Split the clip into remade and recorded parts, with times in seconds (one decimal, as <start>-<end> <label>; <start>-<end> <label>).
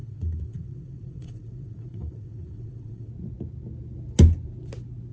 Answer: 0.0-3.1 remade; 3.1-5.1 recorded